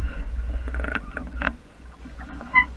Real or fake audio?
fake